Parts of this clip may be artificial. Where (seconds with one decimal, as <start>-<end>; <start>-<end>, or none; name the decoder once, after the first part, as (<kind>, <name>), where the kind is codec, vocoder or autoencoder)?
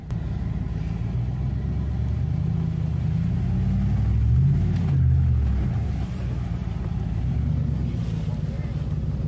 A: none